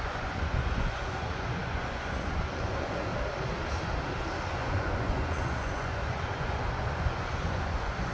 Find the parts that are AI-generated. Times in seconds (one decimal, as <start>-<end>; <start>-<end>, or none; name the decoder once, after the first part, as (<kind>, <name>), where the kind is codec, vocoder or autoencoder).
0.0-3.1 (vocoder, Vocos); 4.5-8.1

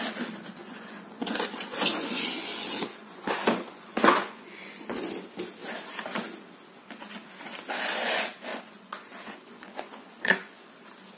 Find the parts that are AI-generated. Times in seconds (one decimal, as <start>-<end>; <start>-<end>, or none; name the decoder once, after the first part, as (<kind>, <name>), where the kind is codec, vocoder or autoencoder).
0.6-5.1 (vocoder, Vocos); 8.5-10.7

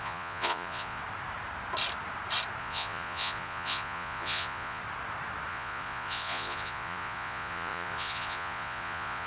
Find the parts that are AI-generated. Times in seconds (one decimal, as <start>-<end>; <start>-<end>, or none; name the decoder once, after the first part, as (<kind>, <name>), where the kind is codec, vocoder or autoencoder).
0.0-1.0 (vocoder, Vocos); 2.6-4.8; 5.5-9.3

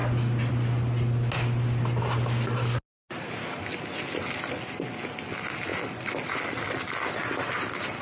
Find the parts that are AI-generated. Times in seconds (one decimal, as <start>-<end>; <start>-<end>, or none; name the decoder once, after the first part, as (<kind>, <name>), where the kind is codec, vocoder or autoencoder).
none

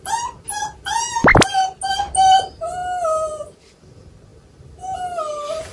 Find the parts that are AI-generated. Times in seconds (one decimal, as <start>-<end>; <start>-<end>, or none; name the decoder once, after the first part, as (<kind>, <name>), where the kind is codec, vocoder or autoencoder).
none